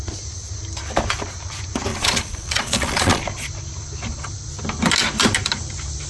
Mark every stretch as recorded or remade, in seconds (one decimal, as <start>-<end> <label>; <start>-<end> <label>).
0.0-1.9 recorded; 1.9-3.2 remade; 3.2-6.1 recorded